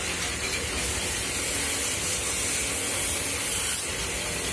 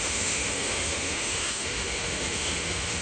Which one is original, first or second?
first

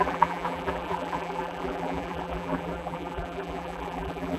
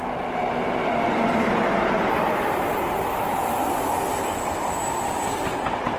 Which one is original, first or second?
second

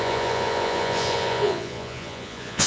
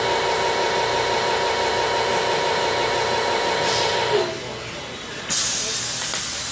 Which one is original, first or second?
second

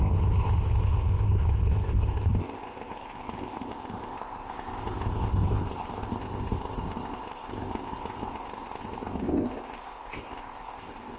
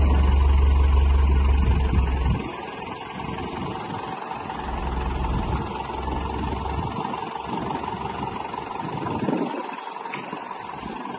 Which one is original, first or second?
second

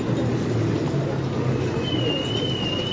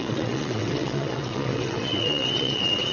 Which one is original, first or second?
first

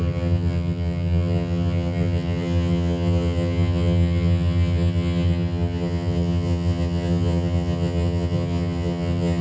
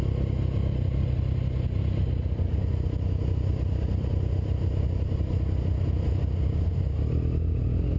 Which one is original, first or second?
second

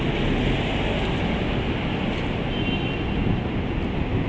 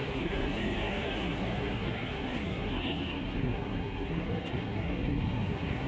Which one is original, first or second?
first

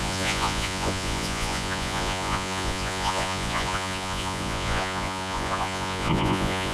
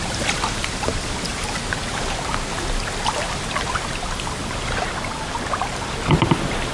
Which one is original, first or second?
second